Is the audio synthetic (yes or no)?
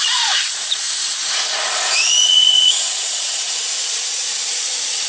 yes